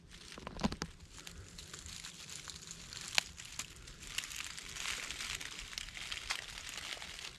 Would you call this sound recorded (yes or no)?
yes